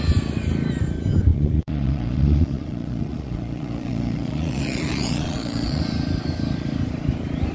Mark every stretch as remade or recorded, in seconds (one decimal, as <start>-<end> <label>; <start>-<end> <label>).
0.0-1.3 recorded; 1.3-5.8 remade; 5.8-7.5 recorded